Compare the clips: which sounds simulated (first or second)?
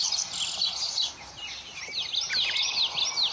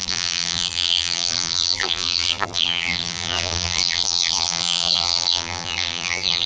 second